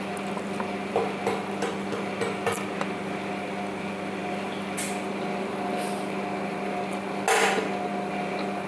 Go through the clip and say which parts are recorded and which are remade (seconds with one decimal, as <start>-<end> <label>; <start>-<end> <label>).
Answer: 0.0-8.7 recorded